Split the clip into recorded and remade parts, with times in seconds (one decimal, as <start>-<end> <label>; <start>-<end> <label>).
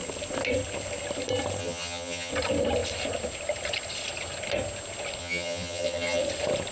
0.0-1.6 recorded; 1.6-2.3 remade; 2.3-5.2 recorded; 5.2-6.2 remade; 6.2-6.7 recorded